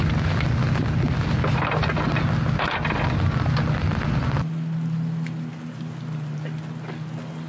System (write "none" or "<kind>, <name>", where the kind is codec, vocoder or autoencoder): none